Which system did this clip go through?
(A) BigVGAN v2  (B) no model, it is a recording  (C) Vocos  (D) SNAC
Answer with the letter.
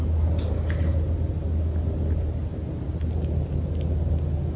B